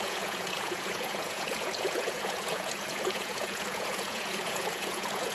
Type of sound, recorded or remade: remade